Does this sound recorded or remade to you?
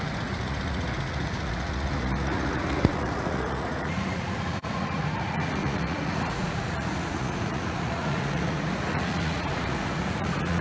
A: remade